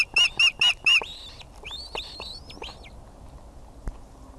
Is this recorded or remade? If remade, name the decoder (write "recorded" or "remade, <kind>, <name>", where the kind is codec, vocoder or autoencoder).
recorded